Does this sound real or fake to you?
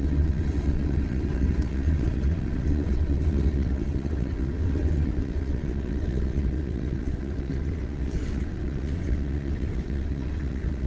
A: fake